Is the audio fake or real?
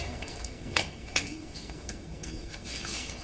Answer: fake